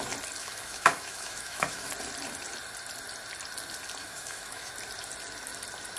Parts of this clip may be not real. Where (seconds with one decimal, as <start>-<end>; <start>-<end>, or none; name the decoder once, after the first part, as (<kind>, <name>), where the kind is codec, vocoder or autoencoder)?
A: 0.4-1.9 (autoencoder, DAC-VAE); 4.0-4.7